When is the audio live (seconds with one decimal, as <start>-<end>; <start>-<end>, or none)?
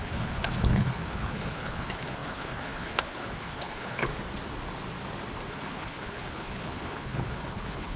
4.1-5.5